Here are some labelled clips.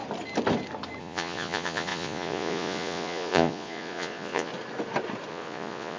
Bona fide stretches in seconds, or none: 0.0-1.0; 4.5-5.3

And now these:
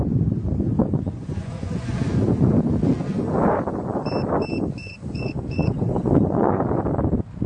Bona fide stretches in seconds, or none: 0.0-0.8; 2.3-4.8; 6.6-7.5

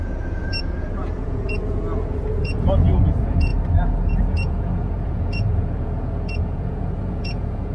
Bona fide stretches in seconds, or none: 3.5-4.2